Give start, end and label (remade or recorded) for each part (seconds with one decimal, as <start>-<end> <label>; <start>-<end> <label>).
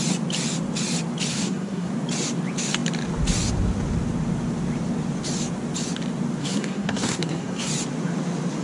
0.0-1.3 recorded; 1.3-1.9 remade; 1.9-6.4 recorded; 6.4-7.7 remade; 7.7-8.6 recorded